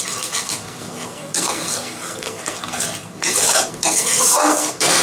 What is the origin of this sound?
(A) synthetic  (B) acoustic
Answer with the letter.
A